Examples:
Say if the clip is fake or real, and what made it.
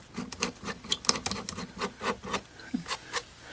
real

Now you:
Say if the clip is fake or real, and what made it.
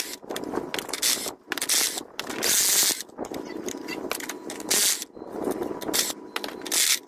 real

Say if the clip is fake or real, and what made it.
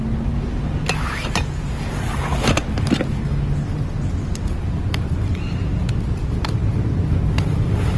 real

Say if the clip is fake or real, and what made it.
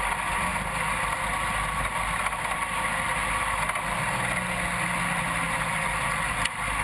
real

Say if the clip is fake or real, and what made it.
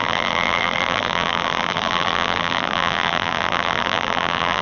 fake, vocoder, BigVGAN v2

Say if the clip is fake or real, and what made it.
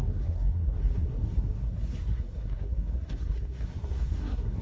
fake, codec, SNAC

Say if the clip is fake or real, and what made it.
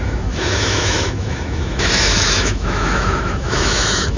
fake, autoencoder, DAC-VAE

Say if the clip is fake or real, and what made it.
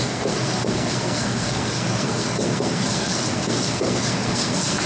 fake, codec, SNAC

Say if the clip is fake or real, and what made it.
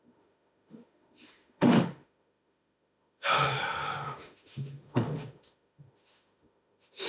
fake, autoencoder, DAC-VAE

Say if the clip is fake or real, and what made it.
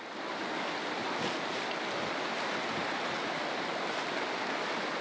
real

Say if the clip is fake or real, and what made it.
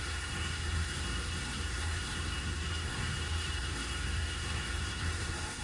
fake, codec, SNAC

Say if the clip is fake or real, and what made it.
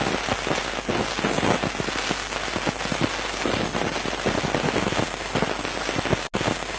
real